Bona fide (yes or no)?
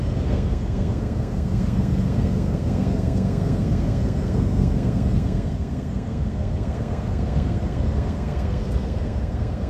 no